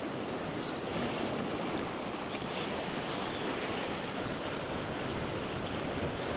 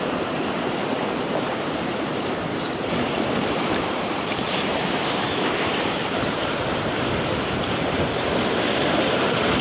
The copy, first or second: second